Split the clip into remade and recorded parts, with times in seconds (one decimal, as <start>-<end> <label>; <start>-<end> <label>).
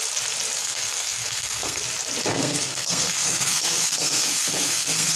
0.0-0.6 recorded; 0.6-1.8 remade; 1.8-2.3 recorded; 2.3-5.2 remade